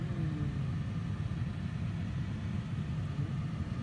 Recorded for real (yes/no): yes